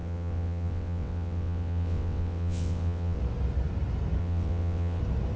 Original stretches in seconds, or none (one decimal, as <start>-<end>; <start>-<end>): 3.2-4.2; 5.0-5.4